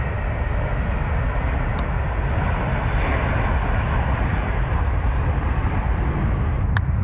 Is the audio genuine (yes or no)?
yes